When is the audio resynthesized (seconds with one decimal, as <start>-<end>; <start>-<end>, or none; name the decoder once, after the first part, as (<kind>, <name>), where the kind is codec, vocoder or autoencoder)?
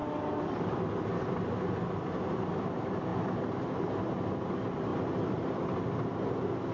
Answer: none